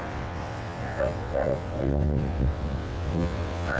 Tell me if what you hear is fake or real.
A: fake